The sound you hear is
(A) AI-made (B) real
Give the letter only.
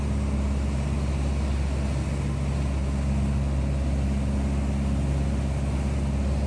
B